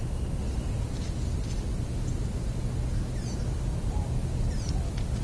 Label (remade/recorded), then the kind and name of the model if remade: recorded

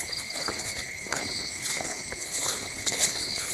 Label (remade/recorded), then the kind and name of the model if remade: remade, codec, HILCodec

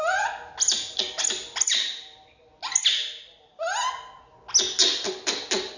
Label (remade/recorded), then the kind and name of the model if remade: recorded